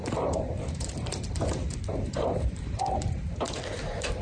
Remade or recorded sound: remade